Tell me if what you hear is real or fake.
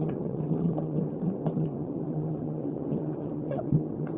fake